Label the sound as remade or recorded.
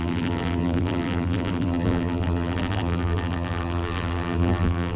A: remade